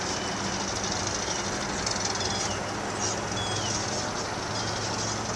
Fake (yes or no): no